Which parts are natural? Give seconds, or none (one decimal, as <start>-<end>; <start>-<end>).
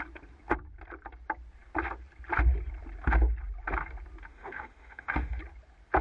0.0-4.3; 5.4-6.0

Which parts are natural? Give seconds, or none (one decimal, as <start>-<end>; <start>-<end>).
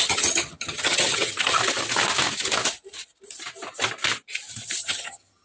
1.6-4.8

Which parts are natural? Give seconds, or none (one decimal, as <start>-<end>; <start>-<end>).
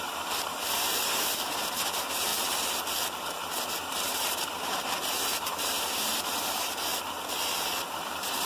2.3-3.6; 6.9-7.9